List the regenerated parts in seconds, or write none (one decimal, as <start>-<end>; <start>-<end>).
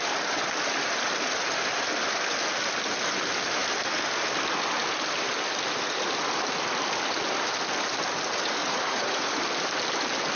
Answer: 8.6-9.4